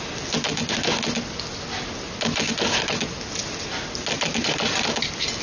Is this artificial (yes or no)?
no